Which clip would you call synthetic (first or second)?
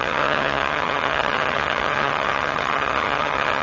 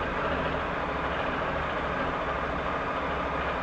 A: first